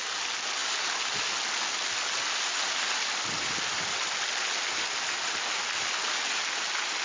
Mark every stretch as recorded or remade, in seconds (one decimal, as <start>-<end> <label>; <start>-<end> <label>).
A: 0.0-7.0 recorded